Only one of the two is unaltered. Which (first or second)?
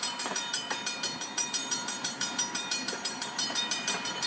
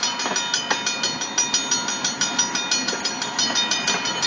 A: second